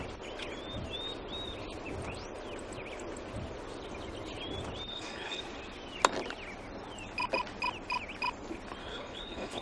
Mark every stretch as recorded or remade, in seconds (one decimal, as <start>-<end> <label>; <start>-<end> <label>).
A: 0.0-4.9 recorded; 4.9-5.4 remade; 5.4-8.8 recorded; 8.8-9.6 remade